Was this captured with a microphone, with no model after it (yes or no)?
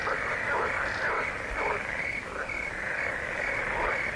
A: yes